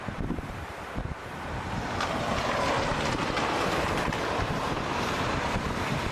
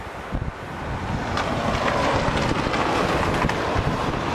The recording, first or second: second